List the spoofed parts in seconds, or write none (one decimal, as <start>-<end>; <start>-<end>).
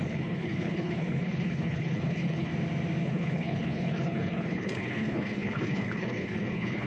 0.0-2.5; 3.0-6.9